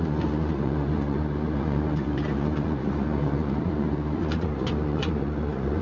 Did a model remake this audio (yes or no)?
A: yes